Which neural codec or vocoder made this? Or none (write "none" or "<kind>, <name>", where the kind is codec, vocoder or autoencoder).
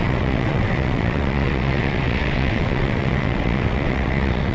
vocoder, WaveNeXt